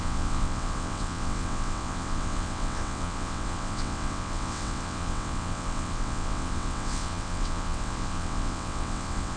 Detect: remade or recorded remade